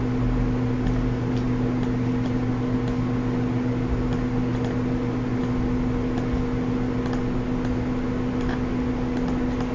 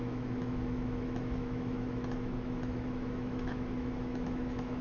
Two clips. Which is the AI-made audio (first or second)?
second